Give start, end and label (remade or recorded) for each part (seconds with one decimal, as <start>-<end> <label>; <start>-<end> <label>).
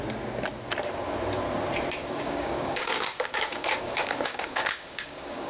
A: 0.0-2.0 recorded; 2.0-5.5 remade